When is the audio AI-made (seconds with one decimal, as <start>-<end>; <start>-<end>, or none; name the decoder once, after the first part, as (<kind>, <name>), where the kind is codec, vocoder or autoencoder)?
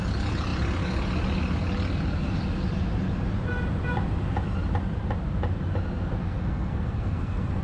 6.2-7.6 (codec, SNAC)